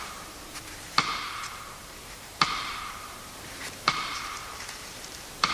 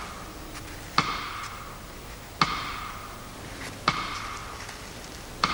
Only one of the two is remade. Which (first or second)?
first